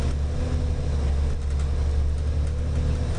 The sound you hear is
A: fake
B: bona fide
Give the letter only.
B